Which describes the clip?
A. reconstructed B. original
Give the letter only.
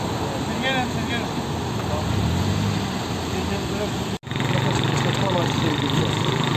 B